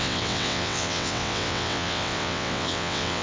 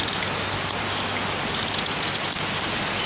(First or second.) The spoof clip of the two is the first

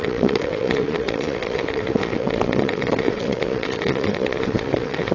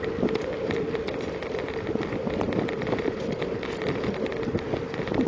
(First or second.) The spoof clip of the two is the first